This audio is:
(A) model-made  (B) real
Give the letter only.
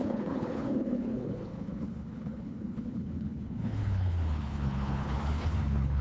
A